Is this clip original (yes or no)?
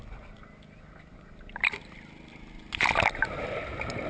yes